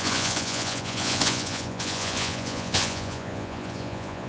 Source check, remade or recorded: remade